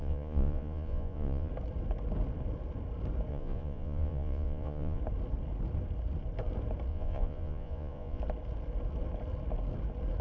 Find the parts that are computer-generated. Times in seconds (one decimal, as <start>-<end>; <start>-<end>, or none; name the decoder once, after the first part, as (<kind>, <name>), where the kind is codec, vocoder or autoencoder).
0.0-1.5 (vocoder, Vocos); 3.3-5.0; 6.9-8.2